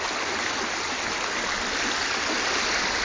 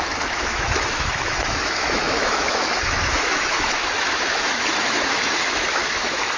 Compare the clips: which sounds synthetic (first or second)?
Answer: second